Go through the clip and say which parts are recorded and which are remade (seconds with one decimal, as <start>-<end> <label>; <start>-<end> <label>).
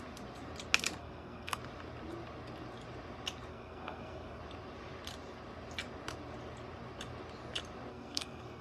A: 0.0-1.0 recorded; 1.0-1.6 remade; 1.6-3.5 recorded; 3.5-4.4 remade; 4.4-7.9 recorded; 7.9-8.6 remade